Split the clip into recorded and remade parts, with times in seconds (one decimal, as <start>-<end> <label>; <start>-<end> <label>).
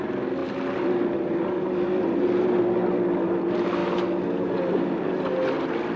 0.0-6.0 recorded